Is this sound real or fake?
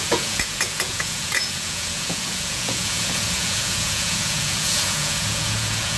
fake